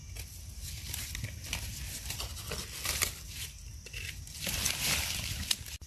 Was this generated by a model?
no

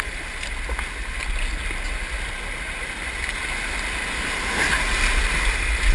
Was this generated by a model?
no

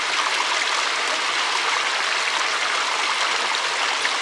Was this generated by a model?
no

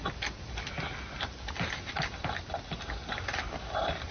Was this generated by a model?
no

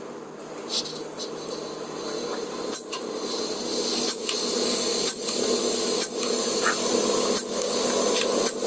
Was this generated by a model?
no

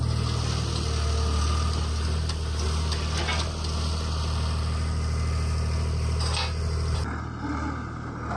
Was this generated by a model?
no